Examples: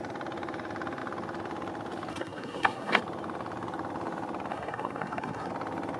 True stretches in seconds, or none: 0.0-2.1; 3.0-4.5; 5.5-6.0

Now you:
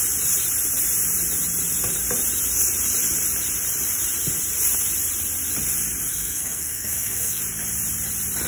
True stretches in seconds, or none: 0.0-6.1; 7.4-8.5

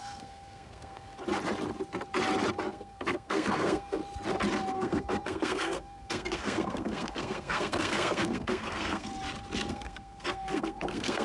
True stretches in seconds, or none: 1.1-2.7; 4.0-4.7; 9.1-9.7

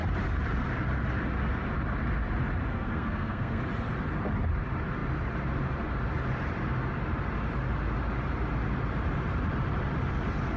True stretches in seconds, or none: 0.0-2.7; 3.6-10.6

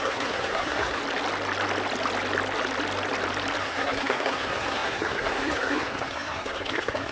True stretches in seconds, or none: 1.0-3.6